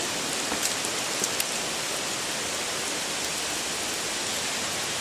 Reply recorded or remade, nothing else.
recorded